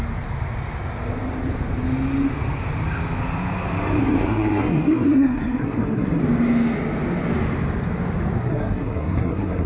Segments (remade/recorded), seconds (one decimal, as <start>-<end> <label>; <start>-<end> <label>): 0.0-4.0 recorded; 4.0-6.2 remade; 6.2-8.4 recorded; 8.4-9.7 remade